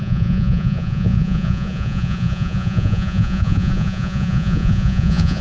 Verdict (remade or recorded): remade